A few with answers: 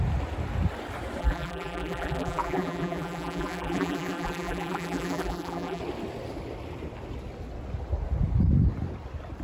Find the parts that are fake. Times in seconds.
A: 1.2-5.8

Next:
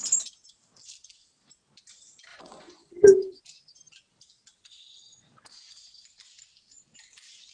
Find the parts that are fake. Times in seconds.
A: 2.3-3.4